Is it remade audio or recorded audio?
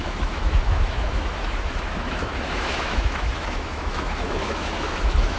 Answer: remade